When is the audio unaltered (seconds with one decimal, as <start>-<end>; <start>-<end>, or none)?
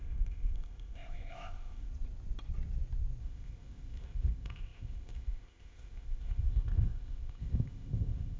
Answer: 1.9-3.2